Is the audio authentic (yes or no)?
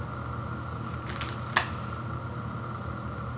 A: yes